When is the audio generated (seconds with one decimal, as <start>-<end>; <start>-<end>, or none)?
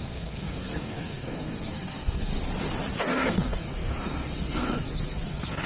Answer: 0.0-2.3; 3.0-5.7